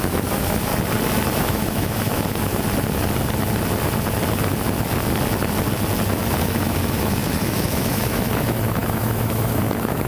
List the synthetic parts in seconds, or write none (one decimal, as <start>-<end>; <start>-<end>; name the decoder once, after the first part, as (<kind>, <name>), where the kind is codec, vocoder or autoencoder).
0.0-0.7 (autoencoder, DAC-VAE); 1.4-2.5; 6.2-10.1